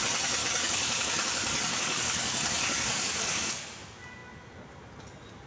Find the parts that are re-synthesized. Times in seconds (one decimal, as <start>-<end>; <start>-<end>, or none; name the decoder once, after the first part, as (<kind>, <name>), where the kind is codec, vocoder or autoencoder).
0.4-3.6 (codec, DAC)